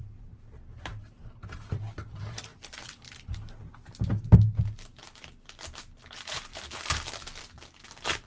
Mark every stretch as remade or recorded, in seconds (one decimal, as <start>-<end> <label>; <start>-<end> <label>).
0.0-1.2 remade; 1.2-2.5 recorded; 2.5-3.2 remade; 3.2-6.5 recorded; 6.5-7.4 remade; 7.4-8.3 recorded